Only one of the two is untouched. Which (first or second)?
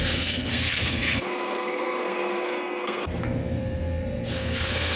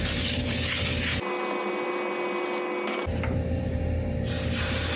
second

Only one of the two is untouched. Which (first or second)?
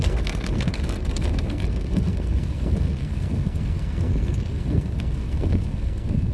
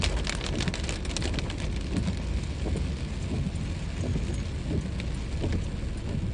second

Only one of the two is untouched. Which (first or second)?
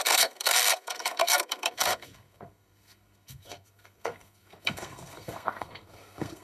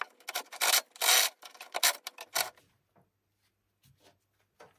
second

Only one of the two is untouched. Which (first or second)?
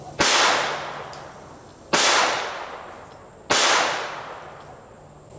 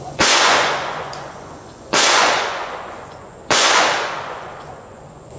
first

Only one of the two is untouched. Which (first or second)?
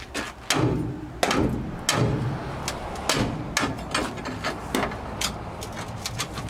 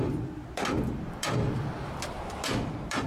first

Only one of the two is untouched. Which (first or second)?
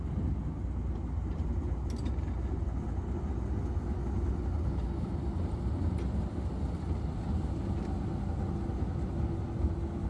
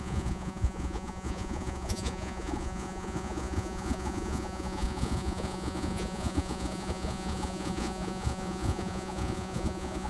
first